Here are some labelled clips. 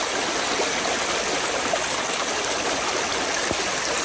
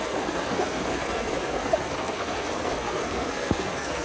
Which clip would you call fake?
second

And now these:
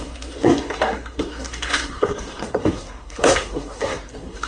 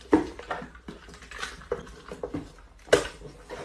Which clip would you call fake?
first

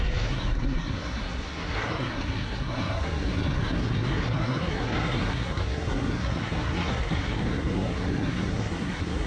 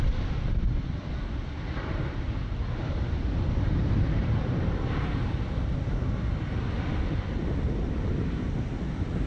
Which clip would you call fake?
first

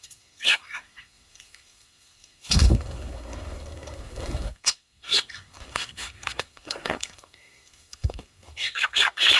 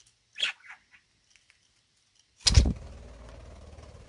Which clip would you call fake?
first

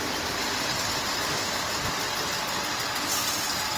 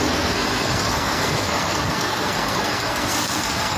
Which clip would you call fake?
second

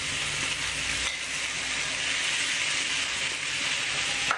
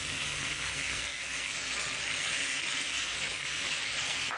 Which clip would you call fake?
second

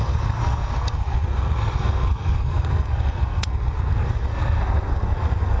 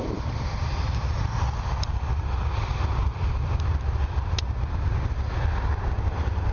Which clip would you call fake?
first